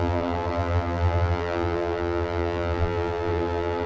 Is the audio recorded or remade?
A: remade